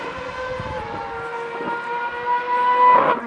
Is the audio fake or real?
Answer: real